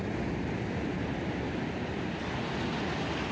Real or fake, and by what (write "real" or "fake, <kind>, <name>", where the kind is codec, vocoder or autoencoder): real